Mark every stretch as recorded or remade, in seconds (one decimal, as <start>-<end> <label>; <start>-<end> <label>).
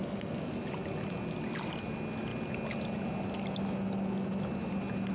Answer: 0.0-5.1 recorded